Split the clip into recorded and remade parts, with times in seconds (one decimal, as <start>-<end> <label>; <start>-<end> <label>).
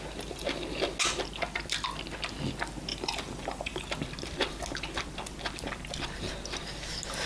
0.0-2.9 recorded; 2.9-3.8 remade; 3.8-7.3 recorded